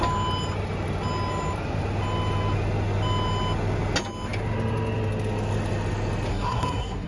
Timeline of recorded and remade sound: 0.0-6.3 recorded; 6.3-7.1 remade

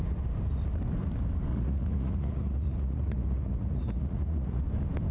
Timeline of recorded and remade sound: 0.0-1.5 recorded; 1.5-4.6 remade; 4.6-5.1 recorded

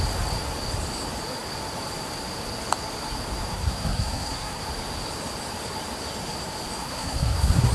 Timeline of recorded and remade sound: 0.0-3.5 recorded; 3.5-4.6 remade; 4.6-6.8 recorded; 6.8-7.7 remade

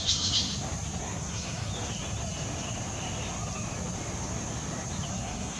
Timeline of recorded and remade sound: 0.0-0.5 remade; 0.5-1.0 recorded; 1.0-1.7 remade; 1.7-5.1 recorded; 5.1-5.6 remade

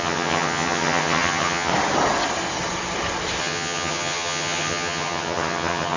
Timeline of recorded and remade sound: 0.0-1.7 remade; 1.7-3.4 recorded; 3.4-6.0 remade